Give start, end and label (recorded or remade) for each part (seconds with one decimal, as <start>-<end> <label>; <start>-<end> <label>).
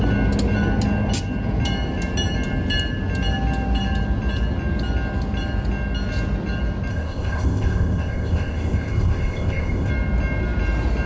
0.0-6.9 recorded; 6.9-9.9 remade; 9.9-11.1 recorded